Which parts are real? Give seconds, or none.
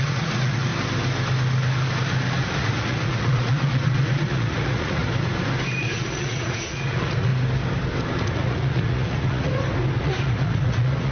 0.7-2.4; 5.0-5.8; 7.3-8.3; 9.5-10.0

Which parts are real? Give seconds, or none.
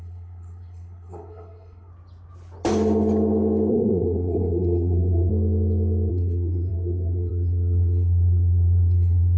1.9-3.7; 5.3-6.1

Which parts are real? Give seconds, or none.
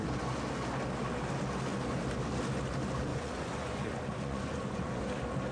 0.0-3.1; 5.0-5.5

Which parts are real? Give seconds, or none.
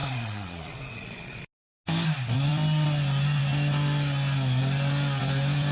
1.4-5.7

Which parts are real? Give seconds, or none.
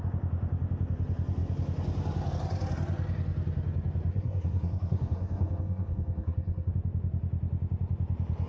0.0-4.1; 6.7-8.5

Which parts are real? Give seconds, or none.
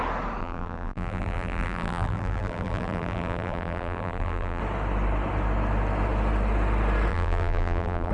0.0-0.4; 4.6-7.1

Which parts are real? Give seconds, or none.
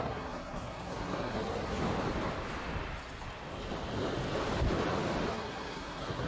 1.8-5.3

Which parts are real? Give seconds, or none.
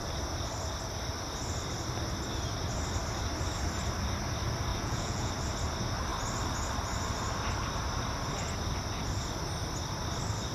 0.0-4.7; 5.3-10.5